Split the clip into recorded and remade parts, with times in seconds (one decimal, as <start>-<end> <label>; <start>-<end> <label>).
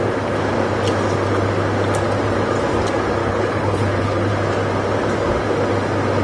0.0-3.2 recorded; 3.2-4.3 remade; 4.3-6.2 recorded